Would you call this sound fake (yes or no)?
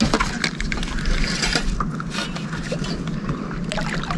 no